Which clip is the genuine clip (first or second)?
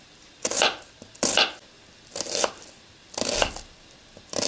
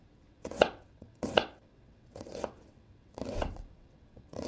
first